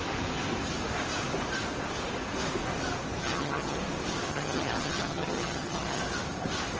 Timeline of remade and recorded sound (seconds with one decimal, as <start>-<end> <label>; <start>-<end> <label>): 0.0-3.2 recorded; 3.2-3.8 remade; 3.8-4.3 recorded; 4.3-6.0 remade; 6.0-6.8 recorded